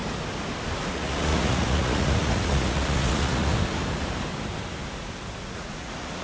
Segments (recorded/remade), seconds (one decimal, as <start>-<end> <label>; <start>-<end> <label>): 0.0-0.9 recorded; 0.9-3.5 remade; 3.5-5.4 recorded; 5.4-6.2 remade